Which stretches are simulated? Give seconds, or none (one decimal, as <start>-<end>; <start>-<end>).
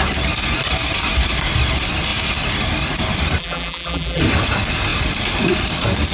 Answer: 3.4-4.2